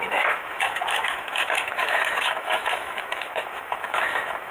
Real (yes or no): no